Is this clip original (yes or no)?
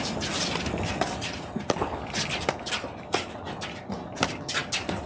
no